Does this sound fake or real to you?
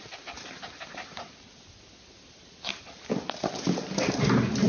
real